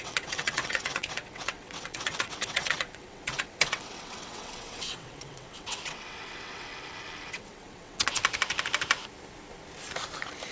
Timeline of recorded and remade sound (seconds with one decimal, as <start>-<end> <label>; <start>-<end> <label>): 0.0-6.7 remade; 6.7-7.3 recorded; 7.3-8.2 remade; 8.2-10.5 recorded